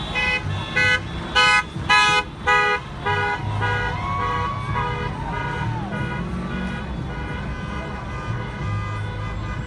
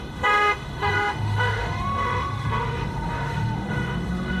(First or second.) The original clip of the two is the first